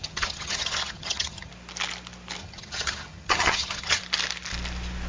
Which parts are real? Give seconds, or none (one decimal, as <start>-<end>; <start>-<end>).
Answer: 1.5-2.4; 4.0-5.1

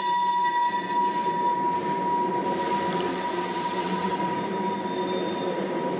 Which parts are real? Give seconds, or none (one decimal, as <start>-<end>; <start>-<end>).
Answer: 0.0-3.1; 4.2-6.0